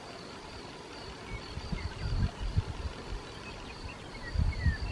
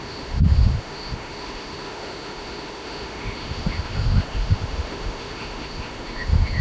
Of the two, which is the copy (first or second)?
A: second